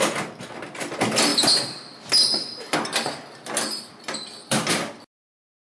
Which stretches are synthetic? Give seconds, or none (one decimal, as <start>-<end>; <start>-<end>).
none